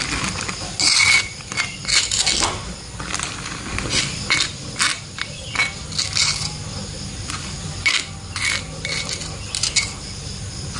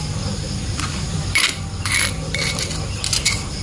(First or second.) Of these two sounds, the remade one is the second